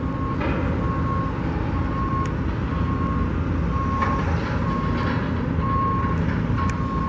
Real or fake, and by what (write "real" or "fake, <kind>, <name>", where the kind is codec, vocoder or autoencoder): real